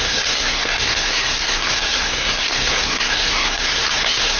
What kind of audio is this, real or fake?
fake